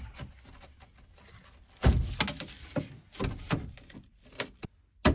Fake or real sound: real